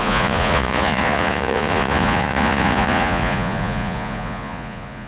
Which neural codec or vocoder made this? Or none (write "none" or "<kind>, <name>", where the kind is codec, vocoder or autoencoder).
vocoder, Vocos